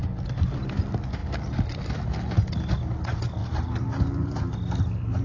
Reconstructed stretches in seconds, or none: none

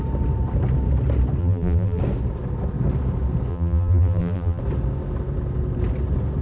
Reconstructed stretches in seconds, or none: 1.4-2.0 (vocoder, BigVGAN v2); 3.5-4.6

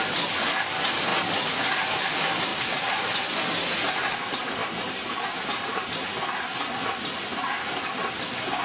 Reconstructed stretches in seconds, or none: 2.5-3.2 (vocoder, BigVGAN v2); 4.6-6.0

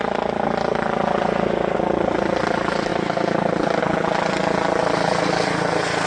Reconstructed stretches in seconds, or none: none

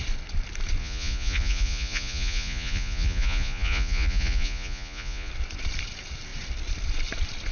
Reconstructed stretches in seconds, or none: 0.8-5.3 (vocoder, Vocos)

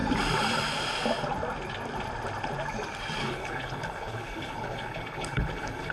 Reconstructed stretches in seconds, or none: 3.2-5.9 (codec, HILCodec)